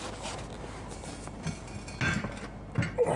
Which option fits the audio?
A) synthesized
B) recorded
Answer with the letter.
B